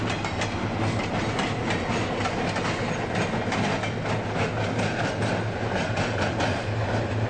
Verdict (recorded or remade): recorded